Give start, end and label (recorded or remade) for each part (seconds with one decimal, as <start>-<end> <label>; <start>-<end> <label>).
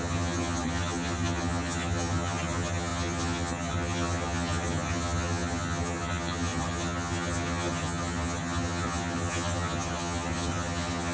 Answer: 0.0-11.1 remade